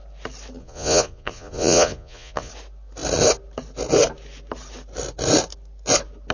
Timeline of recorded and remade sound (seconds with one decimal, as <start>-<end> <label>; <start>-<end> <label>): 0.0-0.6 recorded; 0.6-2.5 remade; 2.5-6.3 recorded